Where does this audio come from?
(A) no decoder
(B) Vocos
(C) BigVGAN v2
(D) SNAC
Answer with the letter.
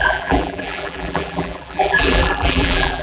C